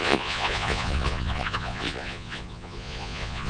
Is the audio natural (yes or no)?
no